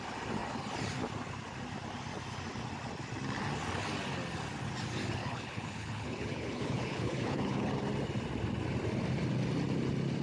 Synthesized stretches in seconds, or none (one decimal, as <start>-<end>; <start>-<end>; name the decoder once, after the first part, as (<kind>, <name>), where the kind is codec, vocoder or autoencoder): 5.2-7.7 (codec, HILCodec)